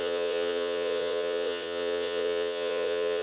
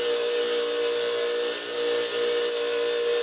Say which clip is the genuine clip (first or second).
second